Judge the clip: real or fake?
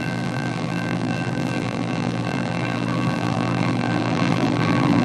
fake